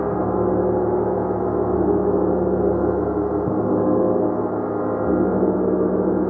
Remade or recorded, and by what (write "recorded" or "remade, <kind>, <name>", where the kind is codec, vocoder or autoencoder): recorded